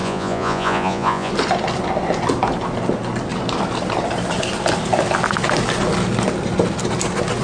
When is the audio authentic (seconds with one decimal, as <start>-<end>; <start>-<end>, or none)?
1.3-7.4